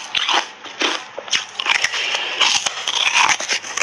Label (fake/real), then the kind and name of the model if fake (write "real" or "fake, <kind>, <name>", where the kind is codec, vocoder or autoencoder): real